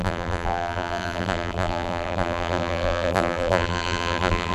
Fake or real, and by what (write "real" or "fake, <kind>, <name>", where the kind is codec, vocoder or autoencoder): fake, vocoder, BigVGAN v2